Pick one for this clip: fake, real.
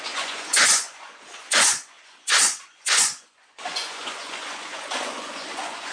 fake